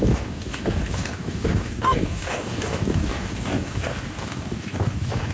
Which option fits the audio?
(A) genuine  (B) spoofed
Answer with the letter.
B